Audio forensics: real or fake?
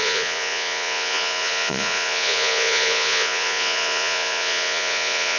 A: fake